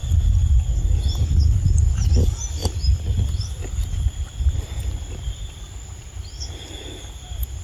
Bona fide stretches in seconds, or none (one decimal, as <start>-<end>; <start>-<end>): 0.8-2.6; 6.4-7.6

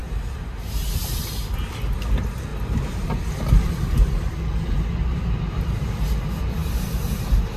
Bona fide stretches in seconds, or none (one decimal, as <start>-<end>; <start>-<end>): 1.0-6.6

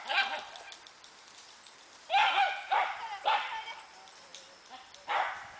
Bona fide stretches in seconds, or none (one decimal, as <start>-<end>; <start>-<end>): 0.0-5.6

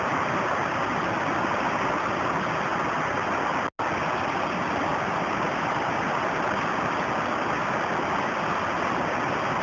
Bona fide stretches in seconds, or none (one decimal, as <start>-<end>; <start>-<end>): 0.0-9.6

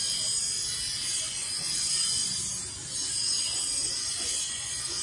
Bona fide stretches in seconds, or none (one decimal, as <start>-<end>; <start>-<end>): 0.0-1.2; 2.2-3.9